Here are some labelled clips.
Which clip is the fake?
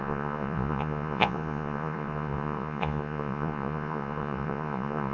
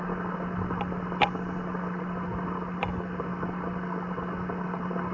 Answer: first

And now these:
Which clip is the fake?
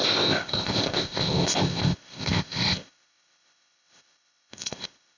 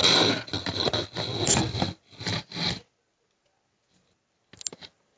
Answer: first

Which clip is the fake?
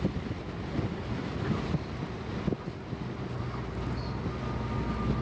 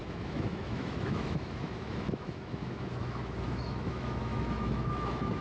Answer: second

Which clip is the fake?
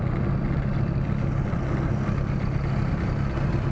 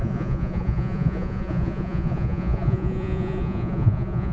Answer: second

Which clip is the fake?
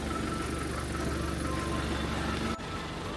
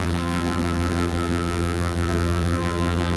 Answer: second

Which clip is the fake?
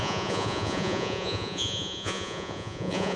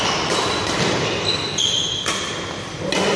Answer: first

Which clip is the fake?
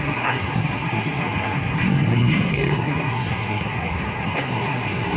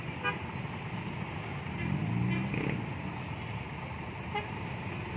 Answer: first